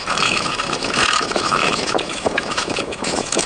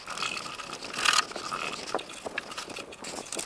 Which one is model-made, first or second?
first